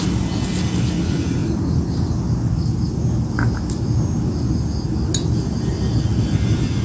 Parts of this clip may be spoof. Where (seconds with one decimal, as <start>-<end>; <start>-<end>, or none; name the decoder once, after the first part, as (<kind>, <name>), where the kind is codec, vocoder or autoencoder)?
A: none